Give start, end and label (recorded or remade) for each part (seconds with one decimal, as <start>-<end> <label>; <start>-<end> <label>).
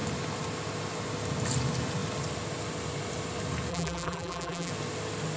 0.0-3.7 recorded; 3.7-4.7 remade; 4.7-5.4 recorded